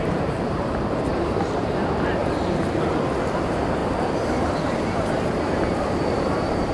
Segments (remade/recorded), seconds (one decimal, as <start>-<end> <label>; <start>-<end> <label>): 0.0-2.2 remade; 2.2-3.4 recorded; 3.4-3.8 remade; 3.8-4.6 recorded; 4.6-6.7 remade